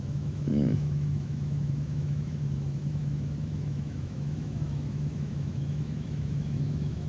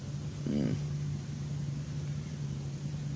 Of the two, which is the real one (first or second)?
second